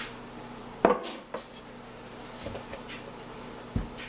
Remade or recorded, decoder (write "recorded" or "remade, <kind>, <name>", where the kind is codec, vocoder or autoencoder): recorded